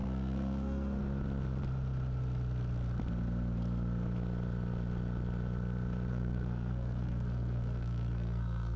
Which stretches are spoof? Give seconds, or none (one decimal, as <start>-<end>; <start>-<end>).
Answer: 0.0-1.0; 6.1-8.8